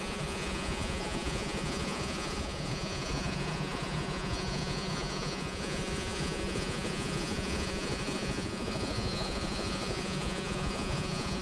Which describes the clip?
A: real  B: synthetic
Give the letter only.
B